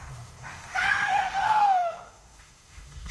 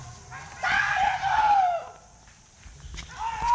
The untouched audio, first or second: second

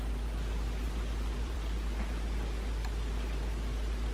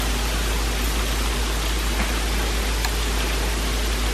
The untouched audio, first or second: second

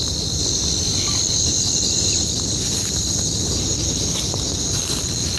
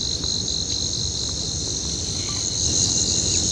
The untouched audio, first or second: second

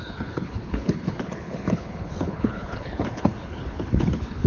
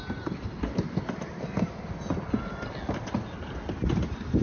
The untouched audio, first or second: second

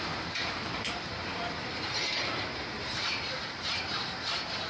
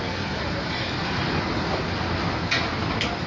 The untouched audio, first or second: second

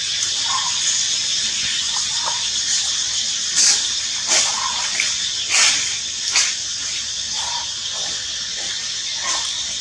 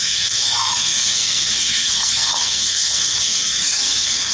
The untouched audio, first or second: first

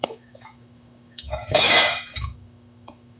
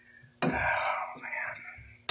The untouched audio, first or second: second